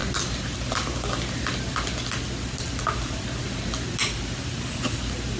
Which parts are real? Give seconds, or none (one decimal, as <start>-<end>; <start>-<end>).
1.1-5.4